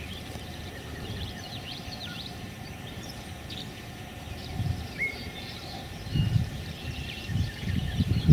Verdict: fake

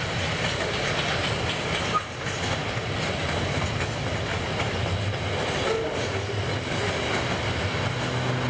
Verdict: real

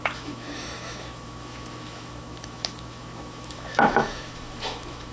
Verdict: fake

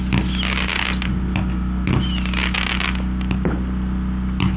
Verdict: real